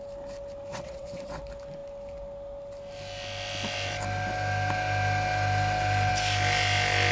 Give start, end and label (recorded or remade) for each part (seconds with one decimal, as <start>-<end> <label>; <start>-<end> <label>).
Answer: 0.0-0.7 recorded; 0.7-1.4 remade; 1.4-7.1 recorded